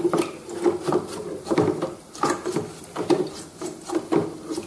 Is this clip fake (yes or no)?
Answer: no